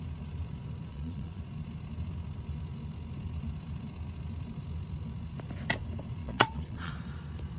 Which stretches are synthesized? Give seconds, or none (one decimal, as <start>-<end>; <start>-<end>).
0.9-1.4; 6.2-6.9